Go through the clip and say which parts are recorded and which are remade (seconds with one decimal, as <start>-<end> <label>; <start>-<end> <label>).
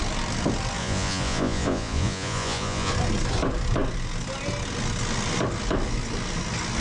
0.0-0.8 recorded; 0.8-2.9 remade; 2.9-6.8 recorded